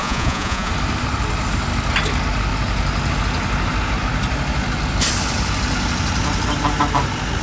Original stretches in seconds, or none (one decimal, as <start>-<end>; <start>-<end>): 0.7-7.4